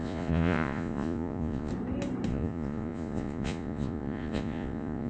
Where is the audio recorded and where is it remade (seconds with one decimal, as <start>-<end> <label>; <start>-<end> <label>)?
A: 0.0-1.7 remade; 1.7-2.3 recorded; 2.3-5.1 remade